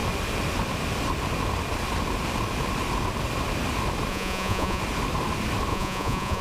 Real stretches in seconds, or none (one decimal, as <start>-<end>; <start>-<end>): 0.0-4.1; 4.8-5.7